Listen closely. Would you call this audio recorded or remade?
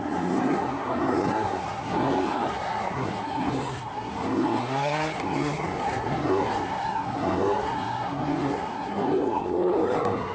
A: remade